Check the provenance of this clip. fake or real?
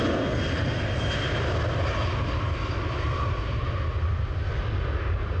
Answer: real